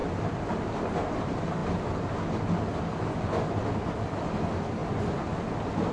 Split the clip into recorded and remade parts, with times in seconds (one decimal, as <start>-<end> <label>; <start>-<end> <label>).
0.0-5.9 recorded

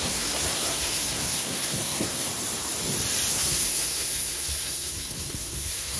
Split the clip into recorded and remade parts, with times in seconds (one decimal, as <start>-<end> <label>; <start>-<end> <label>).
0.0-2.3 remade; 2.3-3.3 recorded; 3.3-6.0 remade